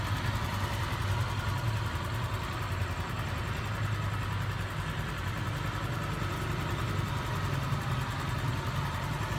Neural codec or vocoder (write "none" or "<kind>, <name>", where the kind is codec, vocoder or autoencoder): none